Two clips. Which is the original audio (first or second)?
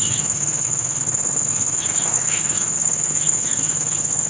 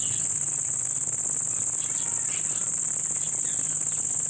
second